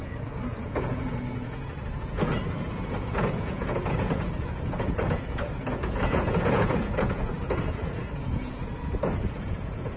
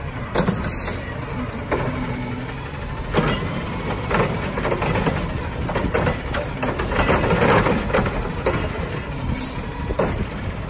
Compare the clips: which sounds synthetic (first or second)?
first